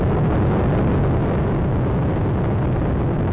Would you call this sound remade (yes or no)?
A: no